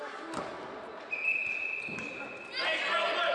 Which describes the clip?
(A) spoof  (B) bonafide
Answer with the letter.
B